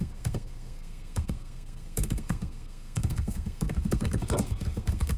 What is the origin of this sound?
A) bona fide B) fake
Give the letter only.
B